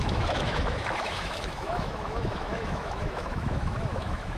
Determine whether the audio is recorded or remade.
remade